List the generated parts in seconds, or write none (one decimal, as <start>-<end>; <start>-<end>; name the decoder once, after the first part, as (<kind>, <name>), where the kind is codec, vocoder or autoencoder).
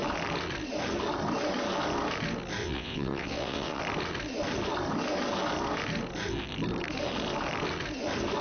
2.6-3.8 (vocoder, WaveNeXt)